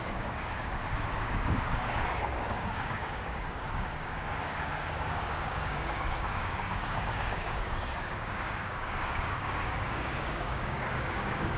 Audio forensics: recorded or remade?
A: remade